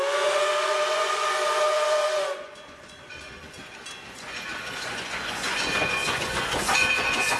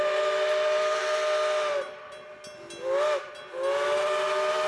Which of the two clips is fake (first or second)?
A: first